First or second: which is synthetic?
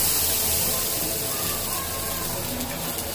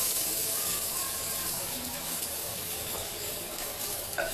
second